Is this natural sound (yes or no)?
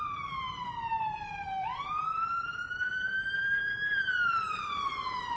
no